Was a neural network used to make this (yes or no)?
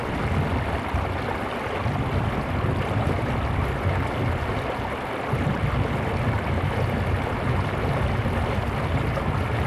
no